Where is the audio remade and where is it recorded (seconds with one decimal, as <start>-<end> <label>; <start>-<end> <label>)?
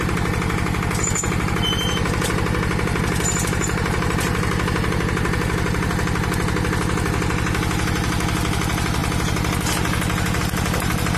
0.0-11.2 recorded